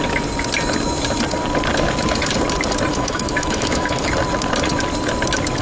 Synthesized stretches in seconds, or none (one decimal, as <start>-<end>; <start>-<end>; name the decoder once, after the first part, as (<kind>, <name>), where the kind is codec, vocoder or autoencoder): 2.9-4.1 (autoencoder, DAC-VAE)